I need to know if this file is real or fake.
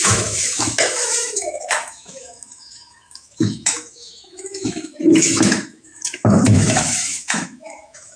fake